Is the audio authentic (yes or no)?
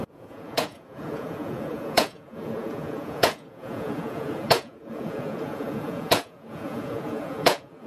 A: no